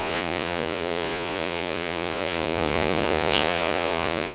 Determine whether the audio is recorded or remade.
remade